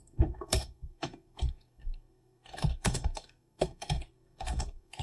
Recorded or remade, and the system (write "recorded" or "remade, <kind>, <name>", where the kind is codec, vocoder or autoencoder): remade, codec, SNAC